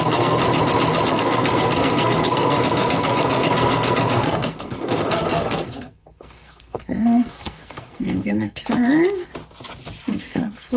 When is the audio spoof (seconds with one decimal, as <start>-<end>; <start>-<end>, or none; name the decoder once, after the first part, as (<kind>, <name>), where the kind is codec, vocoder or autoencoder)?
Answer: 0.0-0.4 (codec, SNAC); 1.1-9.3; 10.1-10.8